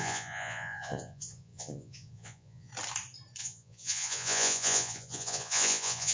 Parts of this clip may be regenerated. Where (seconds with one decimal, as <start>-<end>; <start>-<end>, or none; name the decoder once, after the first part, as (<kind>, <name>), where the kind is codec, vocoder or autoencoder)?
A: 0.0-2.7 (vocoder, Vocos); 3.4-6.1